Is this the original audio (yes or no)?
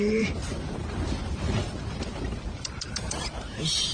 no